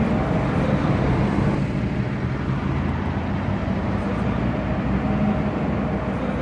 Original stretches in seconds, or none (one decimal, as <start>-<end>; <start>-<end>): 0.0-3.6; 4.7-6.4